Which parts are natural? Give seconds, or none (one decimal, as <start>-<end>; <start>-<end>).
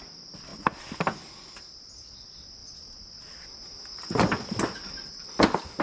0.0-5.8